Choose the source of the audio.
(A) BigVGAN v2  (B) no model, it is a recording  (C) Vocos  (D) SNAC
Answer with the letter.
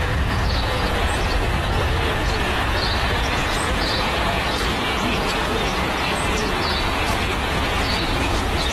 C